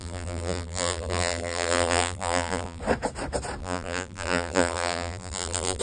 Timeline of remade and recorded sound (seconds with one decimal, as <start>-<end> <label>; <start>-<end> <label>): 0.0-2.8 remade; 2.8-3.6 recorded; 3.6-5.8 remade